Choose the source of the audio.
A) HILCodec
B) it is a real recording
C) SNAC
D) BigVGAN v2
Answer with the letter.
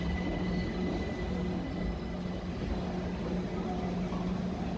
B